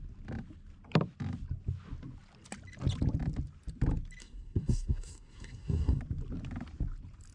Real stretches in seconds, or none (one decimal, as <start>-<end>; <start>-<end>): 0.0-4.2; 6.0-7.3